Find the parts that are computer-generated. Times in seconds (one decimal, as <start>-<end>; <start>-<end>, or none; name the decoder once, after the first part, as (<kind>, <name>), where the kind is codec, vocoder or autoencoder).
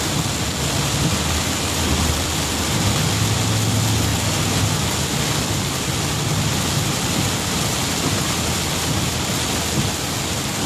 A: none